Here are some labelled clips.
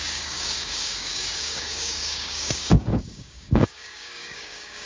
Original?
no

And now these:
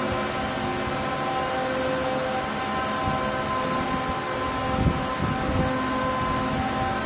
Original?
yes